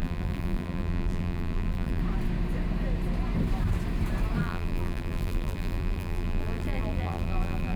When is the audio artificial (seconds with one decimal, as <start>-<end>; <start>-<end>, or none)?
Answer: 0.0-2.0; 4.4-7.8